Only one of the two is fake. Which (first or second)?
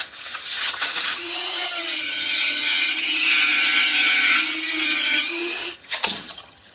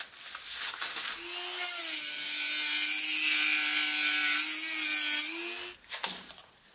first